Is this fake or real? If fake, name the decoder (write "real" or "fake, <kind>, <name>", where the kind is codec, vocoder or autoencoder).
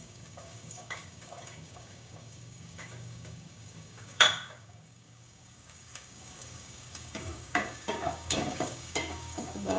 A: fake, codec, DAC